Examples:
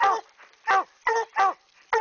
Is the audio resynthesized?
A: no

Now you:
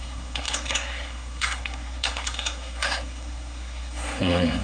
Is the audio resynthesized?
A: yes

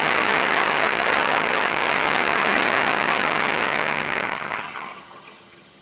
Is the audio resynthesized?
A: yes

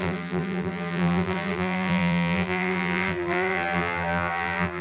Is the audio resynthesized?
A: yes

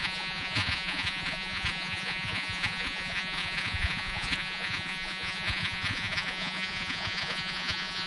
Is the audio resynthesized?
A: yes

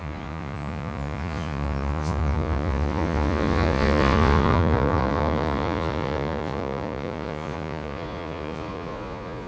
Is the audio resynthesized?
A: yes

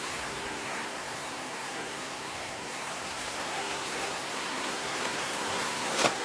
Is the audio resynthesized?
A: yes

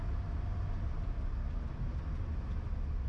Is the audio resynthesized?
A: no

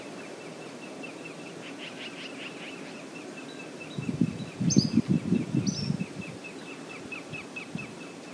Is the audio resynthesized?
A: no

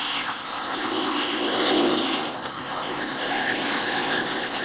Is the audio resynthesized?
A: yes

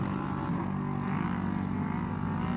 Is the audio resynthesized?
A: no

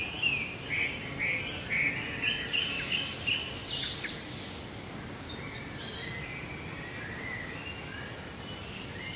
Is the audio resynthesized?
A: no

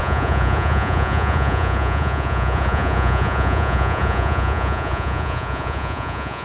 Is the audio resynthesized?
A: yes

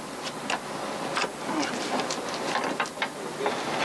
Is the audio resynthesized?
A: no